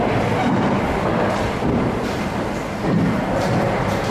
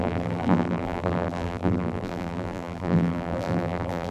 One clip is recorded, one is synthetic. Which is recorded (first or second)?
first